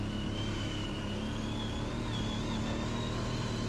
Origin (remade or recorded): recorded